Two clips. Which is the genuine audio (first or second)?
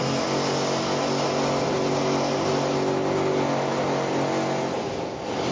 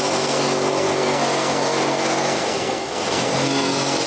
first